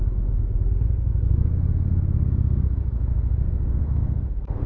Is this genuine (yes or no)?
no